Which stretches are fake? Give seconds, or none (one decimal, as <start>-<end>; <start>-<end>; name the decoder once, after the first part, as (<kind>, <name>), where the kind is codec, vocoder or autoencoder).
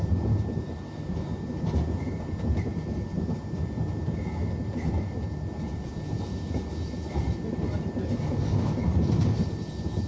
none